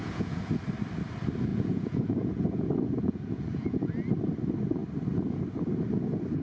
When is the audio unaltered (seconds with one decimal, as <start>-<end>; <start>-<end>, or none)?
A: 0.5-1.5; 3.9-6.4